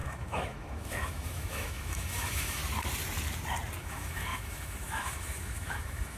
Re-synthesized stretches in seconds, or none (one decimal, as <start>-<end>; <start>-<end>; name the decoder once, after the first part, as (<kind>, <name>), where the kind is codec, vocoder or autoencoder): 0.0-2.6 (autoencoder, DAC-VAE); 3.8-6.2